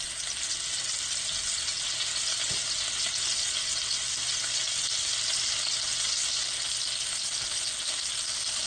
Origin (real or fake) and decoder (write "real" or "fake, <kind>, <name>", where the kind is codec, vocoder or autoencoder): real